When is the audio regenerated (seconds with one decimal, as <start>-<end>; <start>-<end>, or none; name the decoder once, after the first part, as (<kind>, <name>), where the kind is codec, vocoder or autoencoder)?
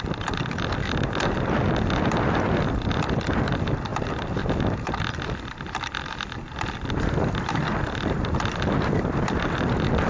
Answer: none